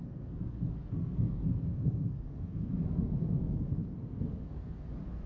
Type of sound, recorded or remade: remade